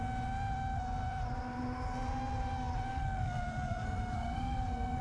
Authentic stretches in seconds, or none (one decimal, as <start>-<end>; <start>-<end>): 0.0-2.9